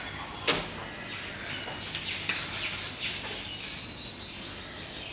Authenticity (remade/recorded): recorded